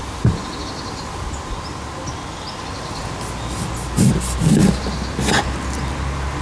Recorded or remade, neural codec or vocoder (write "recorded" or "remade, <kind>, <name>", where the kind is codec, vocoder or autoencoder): recorded